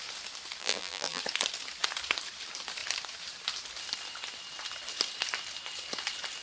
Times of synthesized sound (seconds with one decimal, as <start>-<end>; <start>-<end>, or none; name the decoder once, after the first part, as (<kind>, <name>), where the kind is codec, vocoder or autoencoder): 0.6-1.2 (vocoder, BigVGAN v2)

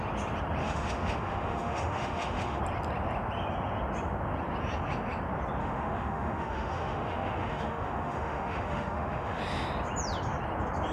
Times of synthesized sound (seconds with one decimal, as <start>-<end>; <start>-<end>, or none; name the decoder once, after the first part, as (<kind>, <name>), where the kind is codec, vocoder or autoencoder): 0.6-2.6 (autoencoder, DAC-VAE); 5.6-9.4